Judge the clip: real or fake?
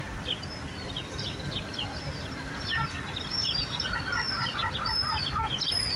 real